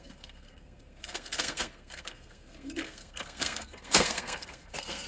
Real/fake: fake